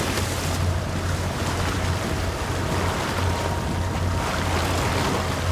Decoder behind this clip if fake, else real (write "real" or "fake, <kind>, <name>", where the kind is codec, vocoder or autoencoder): real